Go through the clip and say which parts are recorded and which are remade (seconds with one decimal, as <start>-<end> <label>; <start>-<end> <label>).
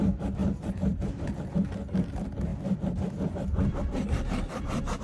0.0-0.4 recorded; 0.4-1.3 remade; 1.3-2.5 recorded; 2.5-5.0 remade